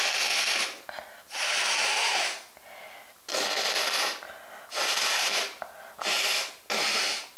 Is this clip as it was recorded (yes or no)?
yes